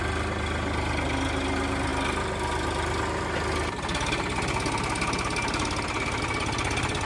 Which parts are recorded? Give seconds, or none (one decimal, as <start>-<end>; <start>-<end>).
0.0-7.1